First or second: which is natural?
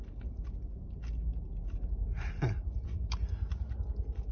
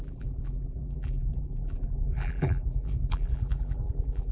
first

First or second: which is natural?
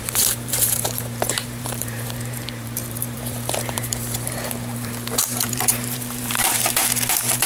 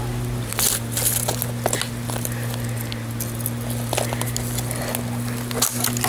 second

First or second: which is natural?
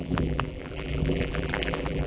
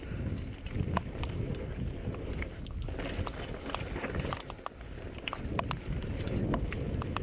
second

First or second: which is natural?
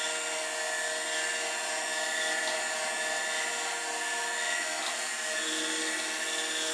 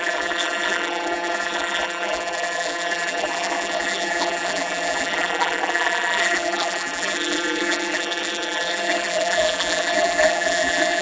first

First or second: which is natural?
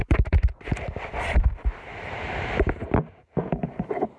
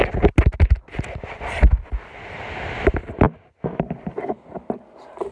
second